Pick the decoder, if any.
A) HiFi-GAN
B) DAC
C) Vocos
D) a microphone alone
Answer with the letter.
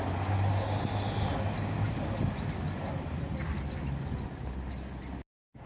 D